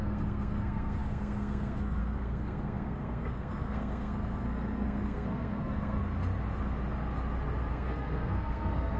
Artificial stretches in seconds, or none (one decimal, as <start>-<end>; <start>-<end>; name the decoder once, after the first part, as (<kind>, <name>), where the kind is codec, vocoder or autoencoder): 0.0-6.0 (codec, SNAC); 7.7-9.0